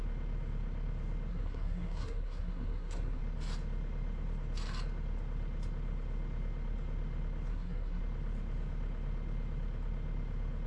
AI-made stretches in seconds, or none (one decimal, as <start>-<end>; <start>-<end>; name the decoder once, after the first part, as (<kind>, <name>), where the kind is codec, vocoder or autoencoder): 1.3-3.2 (codec, SNAC); 7.5-8.0